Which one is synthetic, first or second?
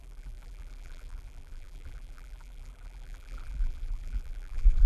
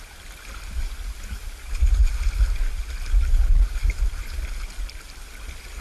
first